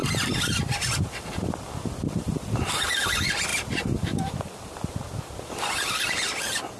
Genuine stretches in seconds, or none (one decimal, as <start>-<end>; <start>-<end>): 2.6-3.5; 6.1-6.8